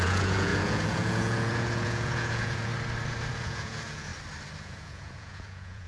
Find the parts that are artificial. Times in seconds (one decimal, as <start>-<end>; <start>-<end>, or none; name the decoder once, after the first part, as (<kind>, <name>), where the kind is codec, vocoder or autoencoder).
0.0-2.7 (vocoder, Vocos); 3.3-4.1; 4.6-5.9